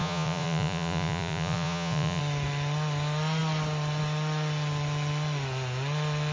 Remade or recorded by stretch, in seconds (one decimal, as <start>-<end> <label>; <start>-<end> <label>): 0.0-2.2 remade; 2.2-6.3 recorded